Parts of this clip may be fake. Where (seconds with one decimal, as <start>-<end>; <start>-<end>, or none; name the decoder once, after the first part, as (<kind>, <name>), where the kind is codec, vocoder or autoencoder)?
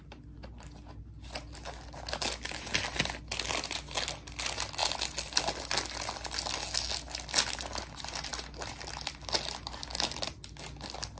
none